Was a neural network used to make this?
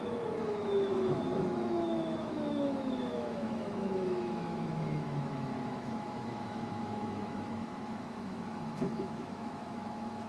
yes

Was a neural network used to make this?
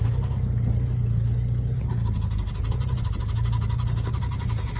no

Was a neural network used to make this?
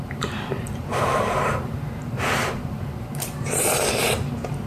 yes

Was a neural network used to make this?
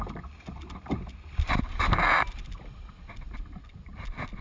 no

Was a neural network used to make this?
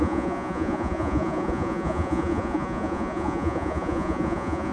yes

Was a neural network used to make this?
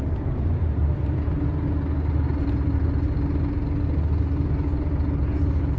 no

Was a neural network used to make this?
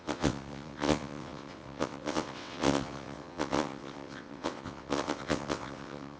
yes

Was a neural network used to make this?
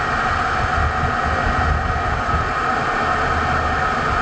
no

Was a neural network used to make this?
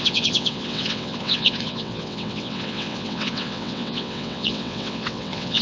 yes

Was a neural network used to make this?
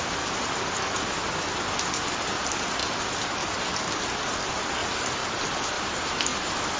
no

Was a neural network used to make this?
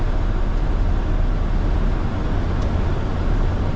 no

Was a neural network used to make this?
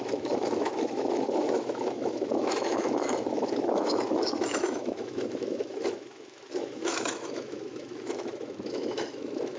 yes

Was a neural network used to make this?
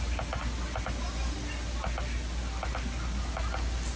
no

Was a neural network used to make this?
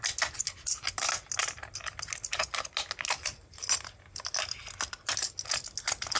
no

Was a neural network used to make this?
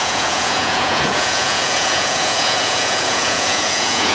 yes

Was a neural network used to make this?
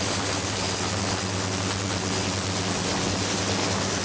no